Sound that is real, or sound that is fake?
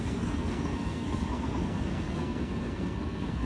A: fake